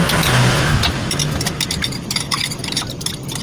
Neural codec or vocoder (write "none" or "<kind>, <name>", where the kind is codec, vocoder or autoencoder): none